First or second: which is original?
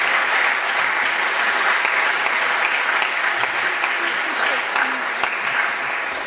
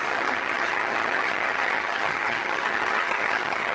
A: first